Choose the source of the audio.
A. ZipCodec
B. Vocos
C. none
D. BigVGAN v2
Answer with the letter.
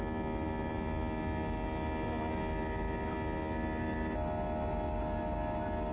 C